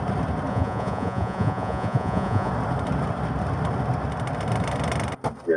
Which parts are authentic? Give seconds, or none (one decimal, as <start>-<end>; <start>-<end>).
0.0-0.5; 2.5-5.6